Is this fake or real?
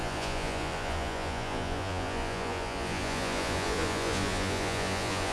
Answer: fake